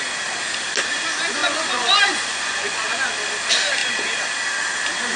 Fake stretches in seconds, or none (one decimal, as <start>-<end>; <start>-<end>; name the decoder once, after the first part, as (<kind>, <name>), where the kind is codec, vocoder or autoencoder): 1.4-3.1 (vocoder, Vocos)